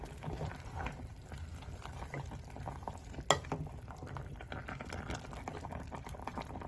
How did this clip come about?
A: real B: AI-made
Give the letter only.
A